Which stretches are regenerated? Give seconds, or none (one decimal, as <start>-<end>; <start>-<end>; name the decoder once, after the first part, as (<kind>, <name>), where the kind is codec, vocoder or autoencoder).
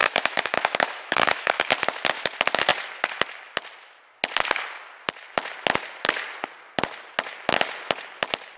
0.0-1.5 (autoencoder, DAC-VAE)